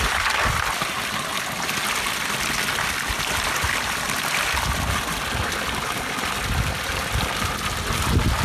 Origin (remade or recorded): recorded